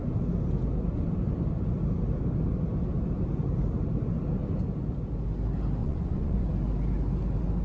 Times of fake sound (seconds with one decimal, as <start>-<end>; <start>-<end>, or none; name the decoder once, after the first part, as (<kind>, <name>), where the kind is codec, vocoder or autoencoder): 5.8-6.5 (vocoder, Vocos)